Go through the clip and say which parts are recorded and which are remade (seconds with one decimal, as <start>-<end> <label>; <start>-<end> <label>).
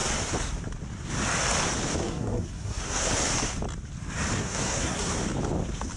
0.0-2.0 recorded; 2.0-3.1 remade; 3.1-4.4 recorded; 4.4-5.1 remade; 5.1-6.0 recorded